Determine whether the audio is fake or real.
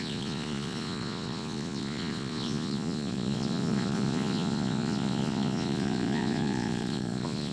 fake